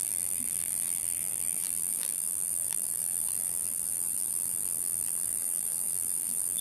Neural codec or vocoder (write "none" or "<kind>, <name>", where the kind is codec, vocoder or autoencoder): vocoder, BigVGAN v2